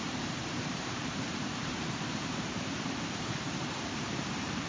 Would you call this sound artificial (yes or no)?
yes